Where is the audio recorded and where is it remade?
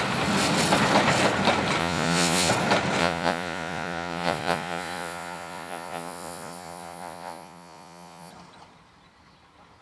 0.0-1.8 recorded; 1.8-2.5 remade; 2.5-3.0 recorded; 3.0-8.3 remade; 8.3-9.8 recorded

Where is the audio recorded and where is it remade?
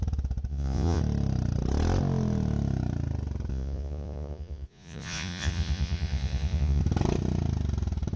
0.0-0.5 recorded; 0.5-1.0 remade; 1.0-3.5 recorded; 3.5-6.8 remade; 6.8-8.2 recorded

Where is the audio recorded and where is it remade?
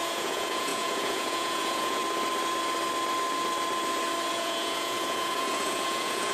0.0-2.0 remade; 2.0-4.3 recorded; 4.3-6.3 remade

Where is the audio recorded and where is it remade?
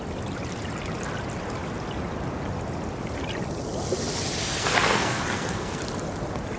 0.0-4.4 recorded; 4.4-5.8 remade; 5.8-6.6 recorded